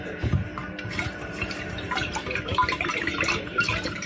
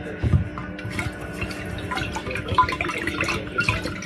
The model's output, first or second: first